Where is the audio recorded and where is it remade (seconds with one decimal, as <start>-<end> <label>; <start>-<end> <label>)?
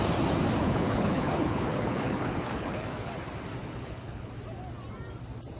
0.0-0.6 recorded; 0.6-3.1 remade; 3.1-3.6 recorded; 3.6-4.3 remade; 4.3-5.6 recorded